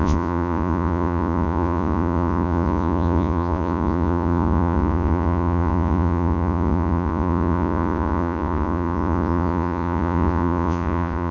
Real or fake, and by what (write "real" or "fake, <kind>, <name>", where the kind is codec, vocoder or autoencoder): fake, vocoder, Vocos